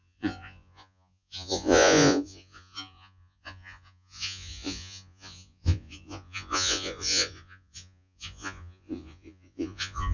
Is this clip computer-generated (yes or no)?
yes